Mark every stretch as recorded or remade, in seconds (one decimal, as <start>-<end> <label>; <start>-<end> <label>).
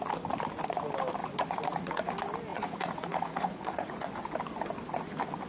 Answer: 0.0-1.2 recorded; 1.2-2.1 remade; 2.1-2.5 recorded; 2.5-4.2 remade; 4.2-5.5 recorded